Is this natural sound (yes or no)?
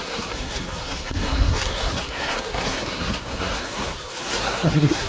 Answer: no